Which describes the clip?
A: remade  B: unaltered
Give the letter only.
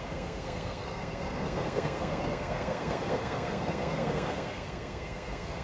A